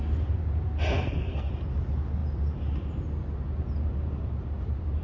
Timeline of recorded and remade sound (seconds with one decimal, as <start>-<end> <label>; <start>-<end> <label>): 0.0-0.9 recorded; 0.9-1.5 remade; 1.5-5.0 recorded